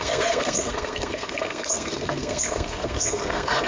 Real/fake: fake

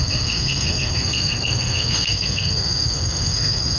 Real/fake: fake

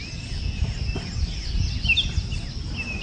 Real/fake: real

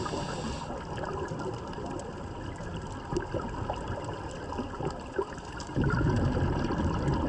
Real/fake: real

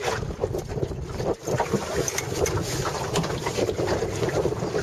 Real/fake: real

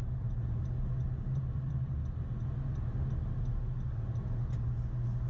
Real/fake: real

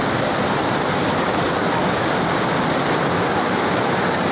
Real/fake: real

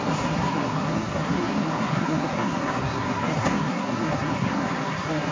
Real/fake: fake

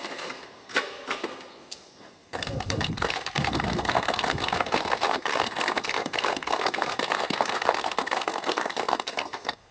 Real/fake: fake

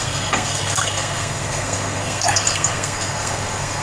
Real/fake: fake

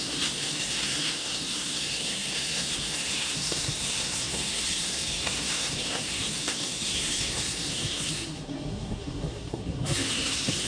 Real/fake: fake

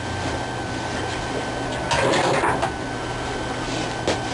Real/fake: real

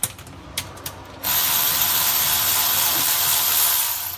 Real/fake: real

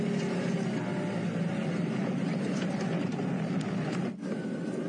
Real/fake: real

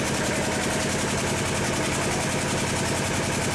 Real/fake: real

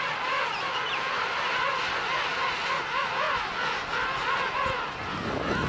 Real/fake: real